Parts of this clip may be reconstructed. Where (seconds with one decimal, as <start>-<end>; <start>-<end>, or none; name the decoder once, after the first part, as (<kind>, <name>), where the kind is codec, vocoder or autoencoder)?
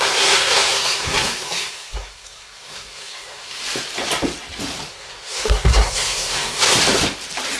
0.0-3.6 (codec, SNAC); 4.9-6.8